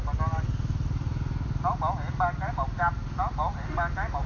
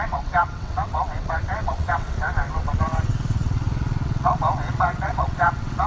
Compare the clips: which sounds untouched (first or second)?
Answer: first